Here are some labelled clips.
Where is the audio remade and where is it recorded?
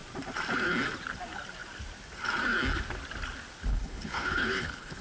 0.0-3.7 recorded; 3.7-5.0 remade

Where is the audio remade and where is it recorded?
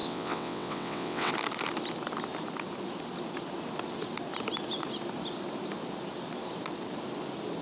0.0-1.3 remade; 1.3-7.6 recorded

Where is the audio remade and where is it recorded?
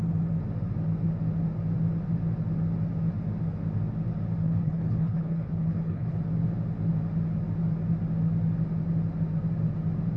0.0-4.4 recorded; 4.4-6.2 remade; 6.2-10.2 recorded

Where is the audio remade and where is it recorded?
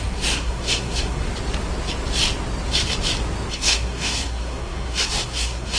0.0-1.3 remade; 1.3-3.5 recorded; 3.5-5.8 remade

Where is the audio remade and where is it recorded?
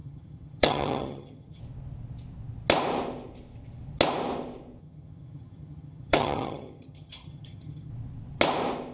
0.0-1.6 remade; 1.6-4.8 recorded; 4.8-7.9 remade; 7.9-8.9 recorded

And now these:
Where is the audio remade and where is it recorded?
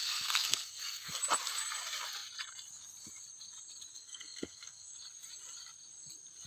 0.0-1.2 remade; 1.2-3.9 recorded; 3.9-4.9 remade; 4.9-6.5 recorded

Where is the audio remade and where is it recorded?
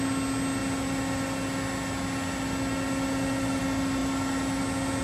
0.0-5.0 recorded